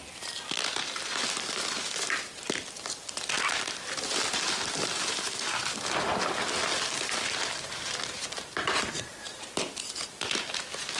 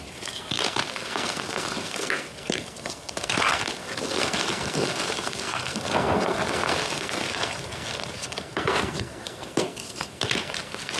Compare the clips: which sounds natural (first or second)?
first